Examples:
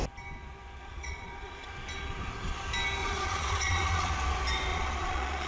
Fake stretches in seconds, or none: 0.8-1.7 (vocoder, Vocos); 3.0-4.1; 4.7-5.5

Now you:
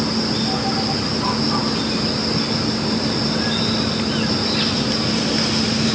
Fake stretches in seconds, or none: none

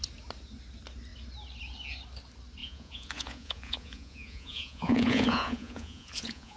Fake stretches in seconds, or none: 2.6-6.6 (vocoder, Vocos)

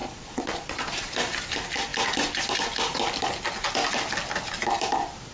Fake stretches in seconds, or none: 0.0-1.1 (vocoder, Vocos)